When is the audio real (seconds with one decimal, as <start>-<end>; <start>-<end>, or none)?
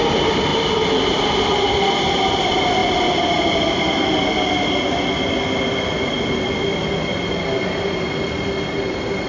0.0-0.5; 1.9-9.3